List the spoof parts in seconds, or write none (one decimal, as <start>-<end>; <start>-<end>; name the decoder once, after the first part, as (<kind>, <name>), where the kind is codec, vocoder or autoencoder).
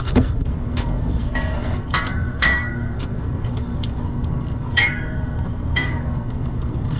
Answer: 0.0-7.0 (codec, SNAC)